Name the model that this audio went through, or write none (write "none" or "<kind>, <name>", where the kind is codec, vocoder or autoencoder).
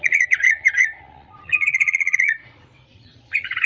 vocoder, Vocos